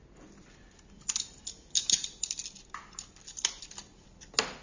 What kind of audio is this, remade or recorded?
recorded